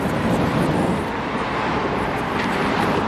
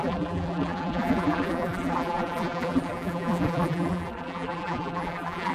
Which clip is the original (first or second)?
first